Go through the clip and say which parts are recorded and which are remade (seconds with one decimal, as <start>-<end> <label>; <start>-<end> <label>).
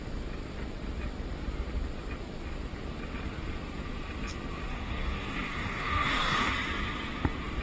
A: 0.0-4.7 recorded; 4.7-6.5 remade; 6.5-7.6 recorded